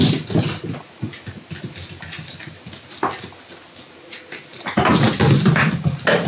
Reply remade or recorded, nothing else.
recorded